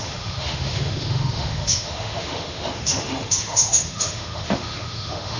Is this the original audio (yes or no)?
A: no